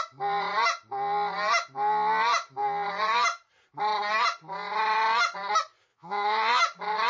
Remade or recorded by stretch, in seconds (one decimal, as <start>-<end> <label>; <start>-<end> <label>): 0.0-5.9 recorded; 5.9-6.6 remade; 6.6-7.1 recorded